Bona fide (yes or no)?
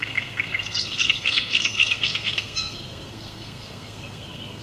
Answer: no